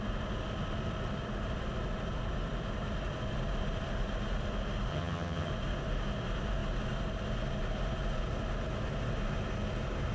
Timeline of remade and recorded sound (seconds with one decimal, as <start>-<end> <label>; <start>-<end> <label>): 0.0-4.9 recorded; 4.9-5.5 remade; 5.5-10.1 recorded